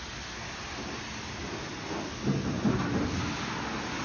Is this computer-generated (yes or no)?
no